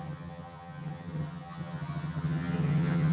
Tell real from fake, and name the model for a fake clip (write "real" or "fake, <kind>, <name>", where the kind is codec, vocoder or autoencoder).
fake, vocoder, HiFi-GAN